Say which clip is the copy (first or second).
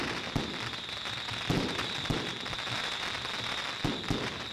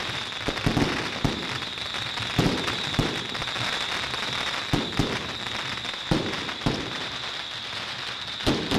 second